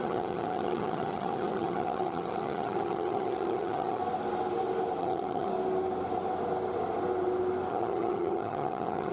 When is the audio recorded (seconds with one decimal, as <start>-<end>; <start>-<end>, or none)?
4.0-5.0; 5.5-7.7